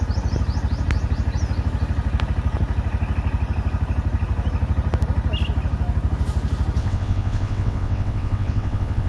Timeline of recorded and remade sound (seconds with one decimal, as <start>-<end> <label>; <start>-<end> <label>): 0.0-6.8 recorded; 6.8-9.1 remade

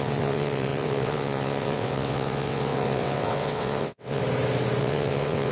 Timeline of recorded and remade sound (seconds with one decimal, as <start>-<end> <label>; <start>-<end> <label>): 0.0-4.2 remade; 4.2-4.8 recorded; 4.8-5.5 remade